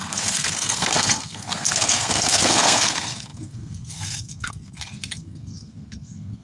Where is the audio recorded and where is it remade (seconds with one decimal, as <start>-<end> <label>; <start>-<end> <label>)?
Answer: 0.0-6.4 remade